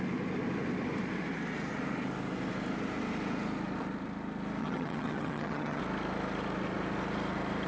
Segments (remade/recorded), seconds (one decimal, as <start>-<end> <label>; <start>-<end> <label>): 0.0-4.6 recorded; 4.6-5.8 remade; 5.8-7.7 recorded